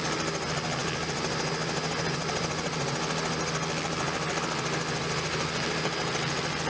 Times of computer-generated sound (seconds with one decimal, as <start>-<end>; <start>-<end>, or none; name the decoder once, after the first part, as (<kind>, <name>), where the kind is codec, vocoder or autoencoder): none